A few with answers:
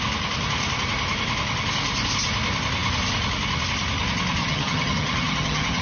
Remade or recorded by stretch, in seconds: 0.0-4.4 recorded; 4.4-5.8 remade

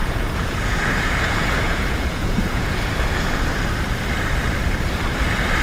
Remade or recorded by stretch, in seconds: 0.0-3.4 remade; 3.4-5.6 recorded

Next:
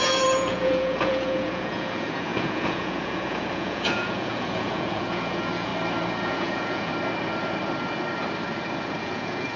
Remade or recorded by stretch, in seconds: 0.0-5.7 remade; 5.7-6.3 recorded; 6.3-6.9 remade; 6.9-9.0 recorded; 9.0-9.6 remade